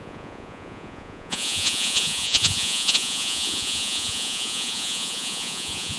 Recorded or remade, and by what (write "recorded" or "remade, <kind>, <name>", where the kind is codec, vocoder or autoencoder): remade, vocoder, Vocos